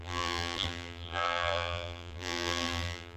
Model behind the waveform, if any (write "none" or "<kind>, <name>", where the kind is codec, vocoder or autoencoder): vocoder, BigVGAN v2